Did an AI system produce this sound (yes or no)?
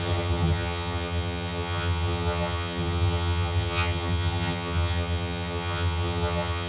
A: yes